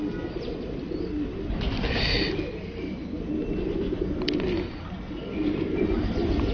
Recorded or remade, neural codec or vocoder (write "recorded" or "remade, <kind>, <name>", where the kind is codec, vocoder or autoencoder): recorded